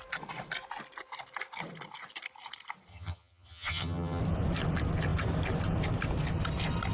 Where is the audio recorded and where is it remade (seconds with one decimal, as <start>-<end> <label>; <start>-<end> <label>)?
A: 0.0-2.9 recorded; 2.9-4.2 remade; 4.2-6.9 recorded